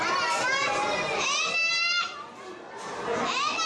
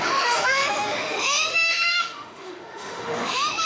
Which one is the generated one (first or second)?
second